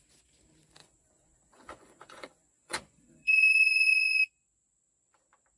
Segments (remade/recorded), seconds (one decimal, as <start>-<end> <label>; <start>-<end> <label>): 0.0-0.8 recorded; 0.8-4.2 remade; 4.2-5.6 recorded